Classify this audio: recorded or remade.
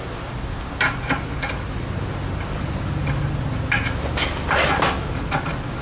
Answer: recorded